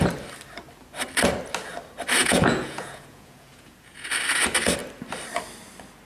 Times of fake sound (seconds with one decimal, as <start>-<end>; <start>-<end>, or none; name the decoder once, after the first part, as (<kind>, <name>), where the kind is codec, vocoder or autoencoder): 2.2-4.1 (vocoder, Vocos)